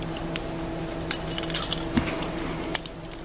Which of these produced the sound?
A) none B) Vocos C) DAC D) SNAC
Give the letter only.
A